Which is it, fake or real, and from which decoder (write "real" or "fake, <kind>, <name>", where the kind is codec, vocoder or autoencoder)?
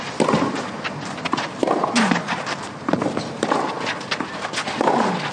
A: real